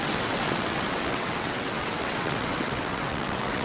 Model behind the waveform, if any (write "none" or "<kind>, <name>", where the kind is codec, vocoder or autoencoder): vocoder, WaveNeXt